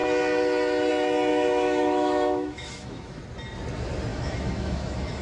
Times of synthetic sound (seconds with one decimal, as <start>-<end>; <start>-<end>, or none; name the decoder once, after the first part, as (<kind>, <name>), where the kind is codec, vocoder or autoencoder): 1.3-3.2 (autoencoder, DAC-VAE); 4.1-5.2